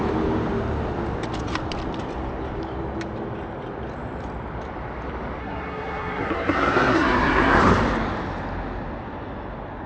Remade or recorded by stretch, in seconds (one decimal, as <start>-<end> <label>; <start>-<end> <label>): 0.0-5.4 recorded; 5.4-7.6 remade; 7.6-9.9 recorded